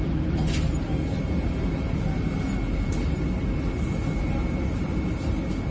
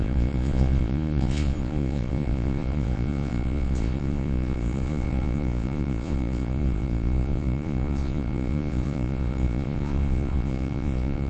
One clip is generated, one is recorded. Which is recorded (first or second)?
first